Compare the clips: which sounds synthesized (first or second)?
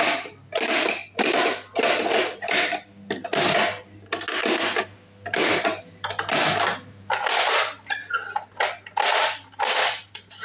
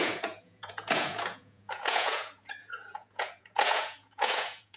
second